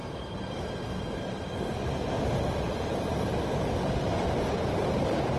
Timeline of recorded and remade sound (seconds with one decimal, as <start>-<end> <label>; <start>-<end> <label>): 0.0-0.7 remade; 0.7-5.4 recorded